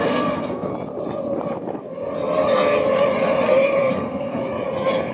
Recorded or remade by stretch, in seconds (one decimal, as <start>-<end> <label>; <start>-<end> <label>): 0.0-0.7 remade; 0.7-3.8 recorded; 3.8-4.4 remade; 4.4-5.1 recorded